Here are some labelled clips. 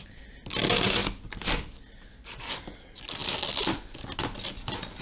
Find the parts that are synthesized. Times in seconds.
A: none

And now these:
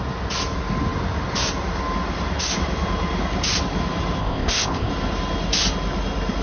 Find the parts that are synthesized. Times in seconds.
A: 4.2-4.9 (codec, ZipCodec)

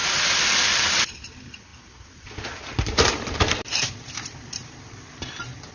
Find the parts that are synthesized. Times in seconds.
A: 0.7-5.7 (vocoder, BigVGAN v2)